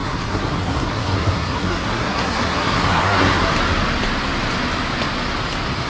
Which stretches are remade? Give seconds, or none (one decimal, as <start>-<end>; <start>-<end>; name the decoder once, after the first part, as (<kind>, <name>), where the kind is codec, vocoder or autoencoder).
0.0-3.5 (codec, SNAC)